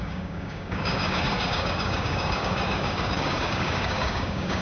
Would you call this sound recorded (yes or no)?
no